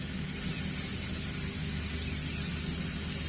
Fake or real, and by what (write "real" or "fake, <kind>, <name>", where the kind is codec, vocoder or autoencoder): real